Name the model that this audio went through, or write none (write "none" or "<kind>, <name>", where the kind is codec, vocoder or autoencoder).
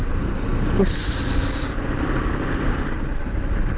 none